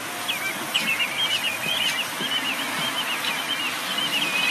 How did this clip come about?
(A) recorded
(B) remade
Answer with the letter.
A